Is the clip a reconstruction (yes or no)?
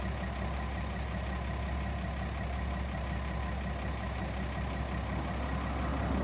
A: no